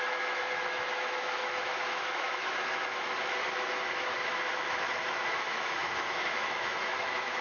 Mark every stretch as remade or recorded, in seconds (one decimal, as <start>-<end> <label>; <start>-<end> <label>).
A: 0.0-7.4 remade

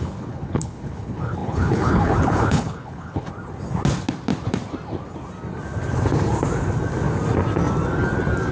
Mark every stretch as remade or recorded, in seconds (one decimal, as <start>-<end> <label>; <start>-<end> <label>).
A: 0.0-3.3 remade; 3.3-8.5 recorded

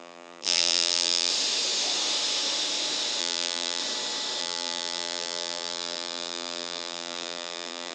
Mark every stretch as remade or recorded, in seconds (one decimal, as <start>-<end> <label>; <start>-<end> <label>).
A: 0.0-1.3 remade; 1.3-3.2 recorded; 3.2-3.8 remade; 3.8-4.4 recorded; 4.4-7.9 remade